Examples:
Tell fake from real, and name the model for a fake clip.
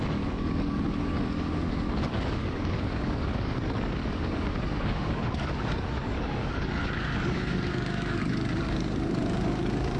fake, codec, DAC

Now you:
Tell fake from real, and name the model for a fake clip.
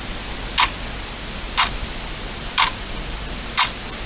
real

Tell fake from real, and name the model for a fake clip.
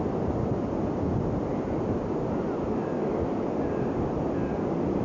real